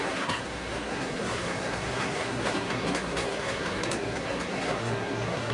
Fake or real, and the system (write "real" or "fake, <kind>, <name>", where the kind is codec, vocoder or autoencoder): fake, codec, SNAC